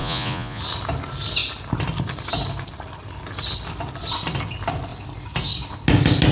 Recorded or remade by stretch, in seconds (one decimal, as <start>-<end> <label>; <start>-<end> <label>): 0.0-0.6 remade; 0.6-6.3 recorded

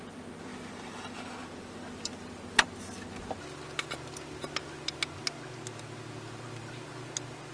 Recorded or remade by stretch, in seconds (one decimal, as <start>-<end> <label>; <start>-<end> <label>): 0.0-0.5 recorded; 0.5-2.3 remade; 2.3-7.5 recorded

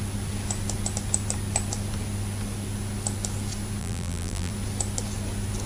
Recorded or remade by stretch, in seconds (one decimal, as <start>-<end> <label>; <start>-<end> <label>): 0.0-3.8 recorded; 3.8-4.5 remade; 4.5-5.7 recorded